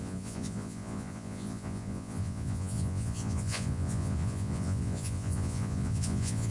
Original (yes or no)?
no